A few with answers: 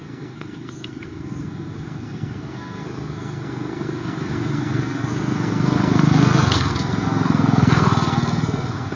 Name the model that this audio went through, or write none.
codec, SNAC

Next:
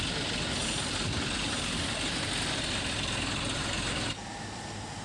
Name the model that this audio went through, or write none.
none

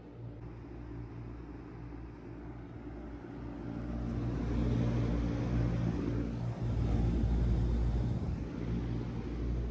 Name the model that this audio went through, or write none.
none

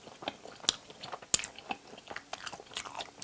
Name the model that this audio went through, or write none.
none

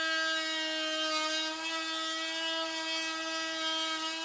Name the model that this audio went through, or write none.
none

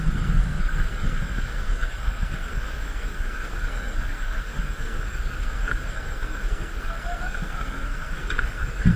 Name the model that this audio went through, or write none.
codec, SNAC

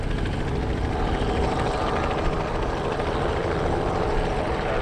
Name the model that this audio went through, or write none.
none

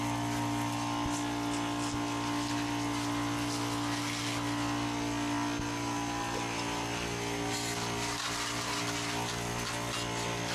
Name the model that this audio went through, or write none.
none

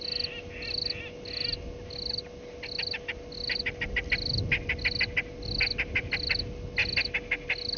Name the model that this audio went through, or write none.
none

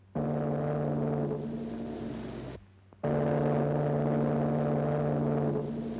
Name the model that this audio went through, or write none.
none